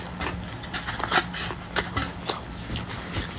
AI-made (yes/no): no